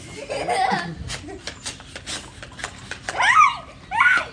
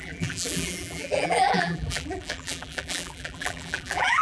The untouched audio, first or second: first